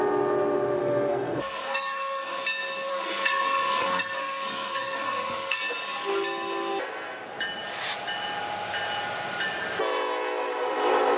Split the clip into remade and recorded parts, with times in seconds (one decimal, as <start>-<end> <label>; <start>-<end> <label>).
0.0-0.8 recorded; 0.8-2.4 remade; 2.4-2.9 recorded; 2.9-5.6 remade; 5.6-11.2 recorded